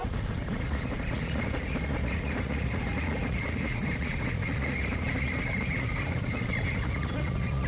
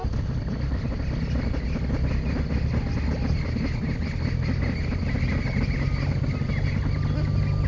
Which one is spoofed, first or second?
first